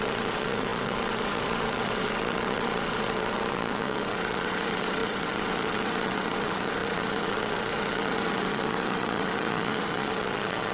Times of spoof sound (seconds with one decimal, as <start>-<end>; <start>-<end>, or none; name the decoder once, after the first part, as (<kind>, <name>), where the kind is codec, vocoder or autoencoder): 0.0-10.7 (vocoder, WaveNeXt)